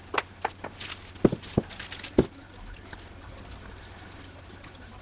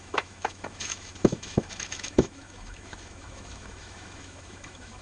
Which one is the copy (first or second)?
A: second